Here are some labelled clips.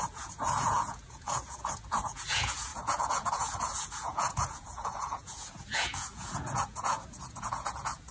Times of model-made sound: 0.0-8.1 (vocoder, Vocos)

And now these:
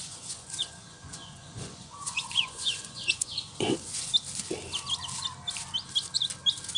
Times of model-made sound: 0.0-4.1 (vocoder, Vocos)

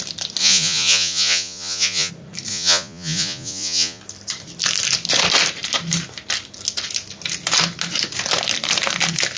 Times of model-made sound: 0.4-2.1 (vocoder, Vocos); 2.5-4.0

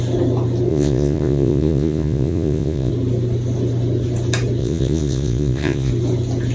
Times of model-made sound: 0.7-2.9 (vocoder, Vocos); 4.6-5.9

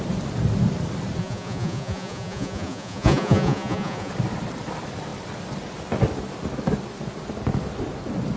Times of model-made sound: 1.2-4.1 (vocoder, Vocos)